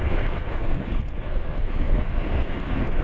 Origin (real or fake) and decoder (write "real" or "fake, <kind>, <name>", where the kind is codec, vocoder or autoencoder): fake, codec, SNAC